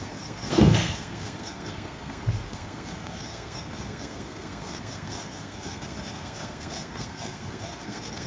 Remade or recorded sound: remade